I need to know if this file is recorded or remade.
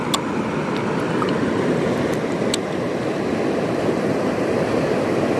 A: recorded